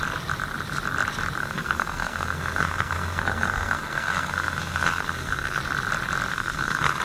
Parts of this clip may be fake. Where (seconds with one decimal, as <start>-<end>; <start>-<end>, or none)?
1.4-5.6; 6.3-7.0